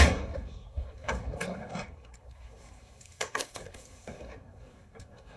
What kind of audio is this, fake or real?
fake